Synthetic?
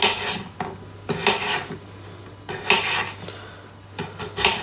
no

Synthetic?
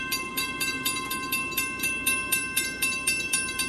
yes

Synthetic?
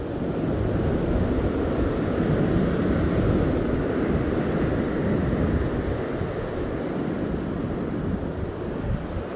no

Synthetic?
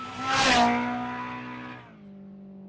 no